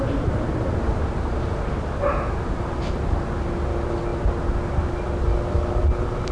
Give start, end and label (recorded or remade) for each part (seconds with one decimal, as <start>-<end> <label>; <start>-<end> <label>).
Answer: 0.0-6.3 recorded